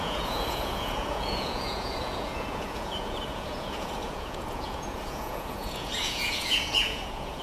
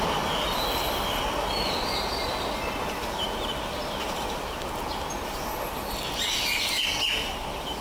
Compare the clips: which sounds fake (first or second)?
first